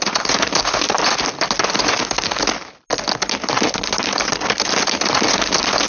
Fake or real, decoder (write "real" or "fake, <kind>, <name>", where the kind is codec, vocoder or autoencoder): real